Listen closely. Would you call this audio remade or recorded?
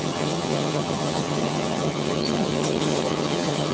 remade